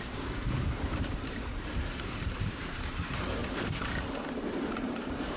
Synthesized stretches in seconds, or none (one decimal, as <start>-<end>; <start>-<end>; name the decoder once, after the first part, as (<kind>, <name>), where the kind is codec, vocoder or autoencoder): 0.0-3.4 (vocoder, BigVGAN v2); 4.3-5.4